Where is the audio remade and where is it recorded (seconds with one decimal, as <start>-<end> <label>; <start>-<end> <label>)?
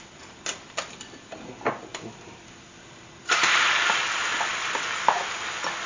0.0-1.9 recorded; 1.9-3.7 remade; 3.7-5.9 recorded